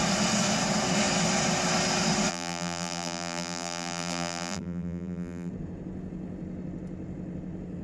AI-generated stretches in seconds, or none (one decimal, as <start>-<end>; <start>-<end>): 2.3-5.5